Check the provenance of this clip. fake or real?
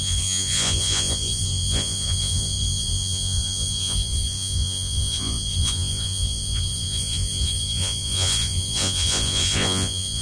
fake